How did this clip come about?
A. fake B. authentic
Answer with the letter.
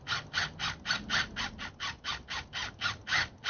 B